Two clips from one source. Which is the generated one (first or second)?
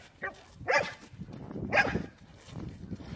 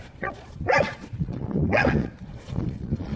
second